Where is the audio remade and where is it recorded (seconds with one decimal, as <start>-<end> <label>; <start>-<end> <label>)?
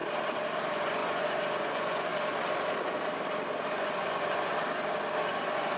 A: 0.0-0.6 recorded; 0.6-2.1 remade; 2.1-3.7 recorded; 3.7-4.5 remade; 4.5-5.3 recorded; 5.3-5.8 remade